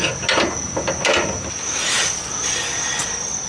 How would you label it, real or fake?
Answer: real